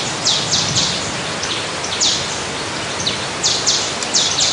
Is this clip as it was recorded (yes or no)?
yes